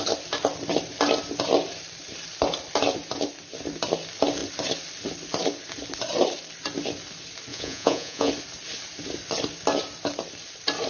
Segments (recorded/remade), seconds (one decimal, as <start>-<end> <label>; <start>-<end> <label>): 0.0-7.5 recorded; 7.5-8.3 remade; 8.3-10.9 recorded